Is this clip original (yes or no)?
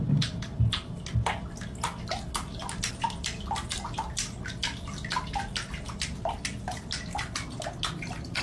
yes